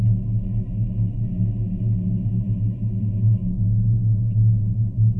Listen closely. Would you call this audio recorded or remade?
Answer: recorded